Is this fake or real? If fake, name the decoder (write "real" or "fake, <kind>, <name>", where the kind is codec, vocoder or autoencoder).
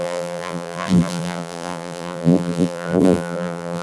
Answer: fake, vocoder, BigVGAN v2